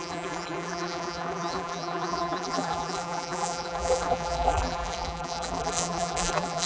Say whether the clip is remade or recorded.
remade